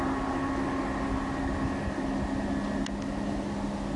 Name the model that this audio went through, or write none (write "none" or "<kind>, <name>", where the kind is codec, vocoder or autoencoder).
none